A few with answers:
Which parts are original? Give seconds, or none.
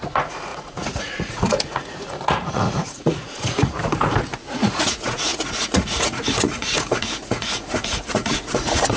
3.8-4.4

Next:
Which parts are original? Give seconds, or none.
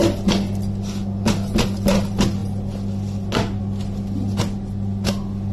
0.0-5.5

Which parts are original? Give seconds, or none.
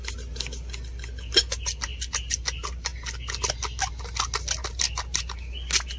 0.0-6.0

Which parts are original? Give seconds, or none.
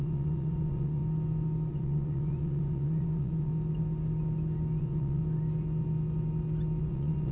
1.0-1.7; 3.5-4.8; 5.2-6.8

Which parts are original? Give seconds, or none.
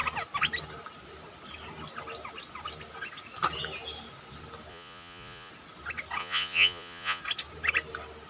0.0-4.7; 5.5-6.2; 7.2-8.3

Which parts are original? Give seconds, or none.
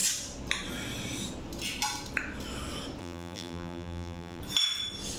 0.0-3.0; 4.4-5.2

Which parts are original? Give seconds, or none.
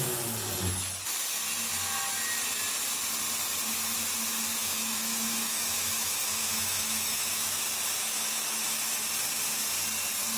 0.0-4.6; 7.6-8.0; 9.1-10.4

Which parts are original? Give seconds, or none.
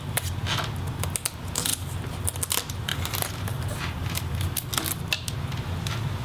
0.0-2.9; 4.7-6.2